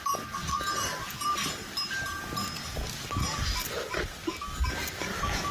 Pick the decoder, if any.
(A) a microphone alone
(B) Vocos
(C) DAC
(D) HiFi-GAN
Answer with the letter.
A